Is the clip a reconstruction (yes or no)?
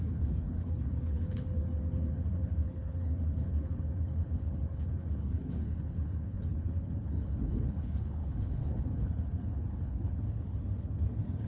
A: yes